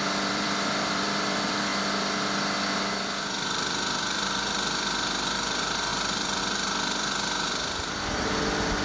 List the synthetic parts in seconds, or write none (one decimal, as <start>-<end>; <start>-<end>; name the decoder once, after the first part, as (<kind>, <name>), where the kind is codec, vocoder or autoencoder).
0.0-1.7 (vocoder, BigVGAN v2); 2.7-8.8